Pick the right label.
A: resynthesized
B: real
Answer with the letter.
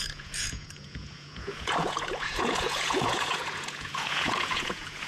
A